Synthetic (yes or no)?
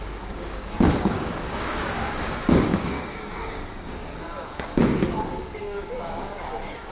yes